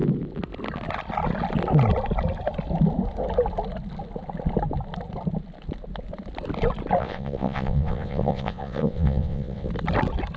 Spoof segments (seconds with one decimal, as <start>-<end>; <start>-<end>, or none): 7.0-9.7